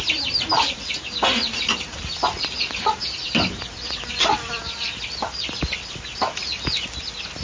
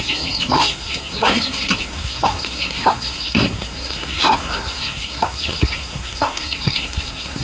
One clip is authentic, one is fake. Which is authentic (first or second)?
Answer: first